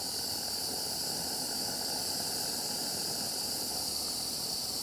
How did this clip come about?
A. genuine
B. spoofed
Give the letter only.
A